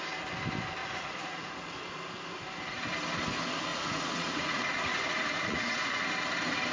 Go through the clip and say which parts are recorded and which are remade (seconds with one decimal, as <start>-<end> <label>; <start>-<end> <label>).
0.0-0.8 recorded; 0.8-1.5 remade; 1.5-3.7 recorded; 3.7-6.1 remade; 6.1-6.7 recorded